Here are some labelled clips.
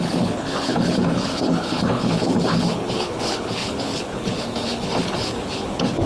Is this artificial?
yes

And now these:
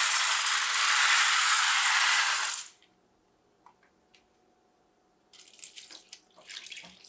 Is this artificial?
no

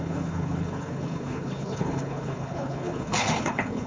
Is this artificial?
yes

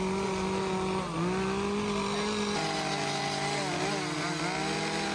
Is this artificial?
no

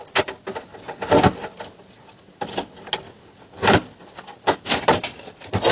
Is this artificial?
no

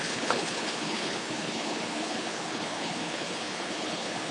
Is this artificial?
yes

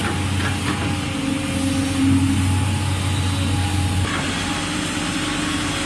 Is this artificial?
no